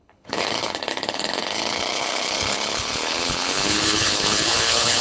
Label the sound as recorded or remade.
remade